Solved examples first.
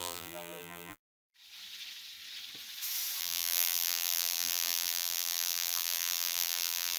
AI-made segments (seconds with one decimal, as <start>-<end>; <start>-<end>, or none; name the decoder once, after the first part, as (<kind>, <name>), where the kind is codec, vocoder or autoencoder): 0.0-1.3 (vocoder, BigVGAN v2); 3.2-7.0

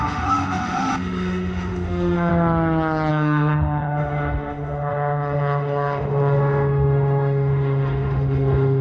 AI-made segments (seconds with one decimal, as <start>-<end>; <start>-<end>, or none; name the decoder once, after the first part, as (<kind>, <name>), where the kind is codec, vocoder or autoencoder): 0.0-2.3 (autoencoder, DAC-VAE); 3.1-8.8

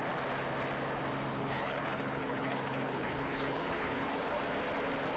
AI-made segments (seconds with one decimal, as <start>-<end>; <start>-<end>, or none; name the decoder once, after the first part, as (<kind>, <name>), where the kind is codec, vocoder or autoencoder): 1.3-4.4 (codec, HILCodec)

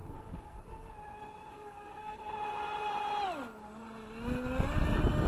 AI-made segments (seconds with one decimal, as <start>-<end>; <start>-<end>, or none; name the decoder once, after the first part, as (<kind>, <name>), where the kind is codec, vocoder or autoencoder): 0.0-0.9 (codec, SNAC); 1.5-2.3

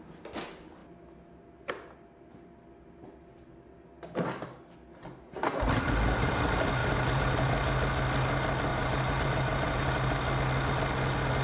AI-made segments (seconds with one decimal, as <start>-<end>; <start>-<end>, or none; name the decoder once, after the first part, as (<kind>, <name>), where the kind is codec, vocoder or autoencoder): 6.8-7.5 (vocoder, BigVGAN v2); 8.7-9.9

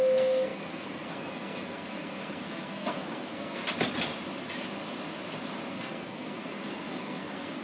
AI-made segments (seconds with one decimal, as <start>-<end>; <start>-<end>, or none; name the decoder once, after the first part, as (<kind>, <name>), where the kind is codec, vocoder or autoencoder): 0.0-3.6 (codec, SNAC); 5.7-7.6

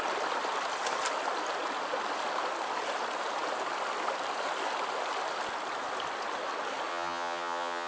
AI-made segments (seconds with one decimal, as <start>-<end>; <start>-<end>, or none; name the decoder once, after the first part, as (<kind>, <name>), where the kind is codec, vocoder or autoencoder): 6.9-7.9 (vocoder, HiFi-GAN)

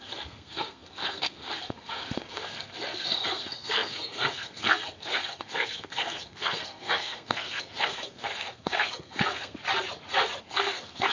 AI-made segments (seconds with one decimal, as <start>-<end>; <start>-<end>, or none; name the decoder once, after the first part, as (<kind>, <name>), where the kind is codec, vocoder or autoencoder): 0.0-9.6 (codec, SNAC); 10.4-11.1